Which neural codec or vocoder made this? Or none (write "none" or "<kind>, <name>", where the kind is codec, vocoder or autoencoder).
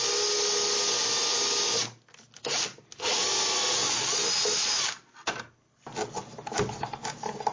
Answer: none